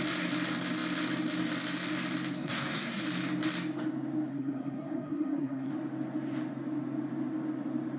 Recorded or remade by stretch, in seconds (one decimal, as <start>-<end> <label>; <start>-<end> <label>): 0.0-2.4 recorded; 2.4-3.0 remade; 3.0-4.3 recorded; 4.3-5.7 remade; 5.7-8.0 recorded

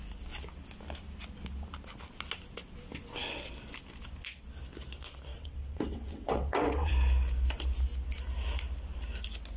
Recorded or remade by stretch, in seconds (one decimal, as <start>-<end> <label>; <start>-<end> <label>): 0.0-5.3 recorded; 5.3-6.9 remade; 6.9-9.6 recorded

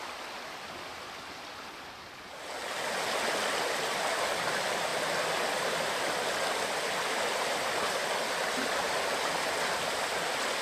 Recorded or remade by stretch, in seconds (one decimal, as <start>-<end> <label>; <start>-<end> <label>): 0.0-10.6 recorded

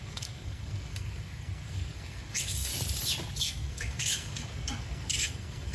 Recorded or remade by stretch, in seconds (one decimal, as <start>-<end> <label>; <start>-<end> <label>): 0.0-2.7 remade; 2.7-3.4 recorded; 3.4-5.7 remade

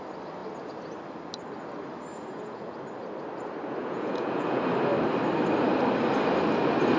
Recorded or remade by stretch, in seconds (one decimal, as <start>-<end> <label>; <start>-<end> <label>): 0.0-2.1 recorded; 2.1-2.6 remade; 2.6-3.8 recorded; 3.8-4.6 remade; 4.6-7.0 recorded

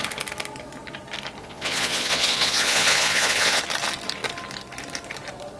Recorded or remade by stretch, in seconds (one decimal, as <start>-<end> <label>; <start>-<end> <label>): 0.0-1.4 recorded; 1.4-3.6 remade; 3.6-5.6 recorded

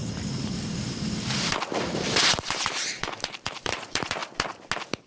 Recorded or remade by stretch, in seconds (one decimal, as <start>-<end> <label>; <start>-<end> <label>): 0.0-4.2 remade; 4.2-5.1 recorded